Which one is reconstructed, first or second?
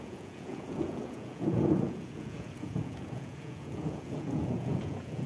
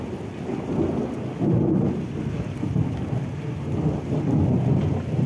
first